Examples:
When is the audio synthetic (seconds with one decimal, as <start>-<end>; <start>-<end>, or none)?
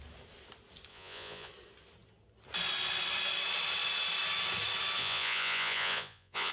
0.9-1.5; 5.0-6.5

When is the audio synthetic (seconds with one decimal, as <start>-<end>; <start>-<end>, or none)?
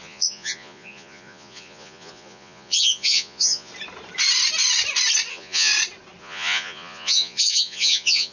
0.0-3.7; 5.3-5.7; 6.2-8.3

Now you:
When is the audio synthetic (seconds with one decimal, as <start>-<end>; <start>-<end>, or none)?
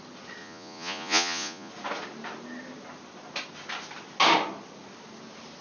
0.4-1.7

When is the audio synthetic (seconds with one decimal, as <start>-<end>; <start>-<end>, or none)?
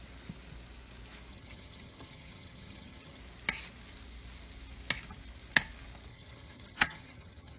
1.3-3.2; 6.1-7.6